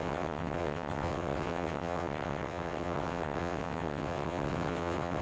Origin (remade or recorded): remade